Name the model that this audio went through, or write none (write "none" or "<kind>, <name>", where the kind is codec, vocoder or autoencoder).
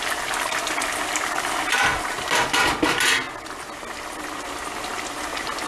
none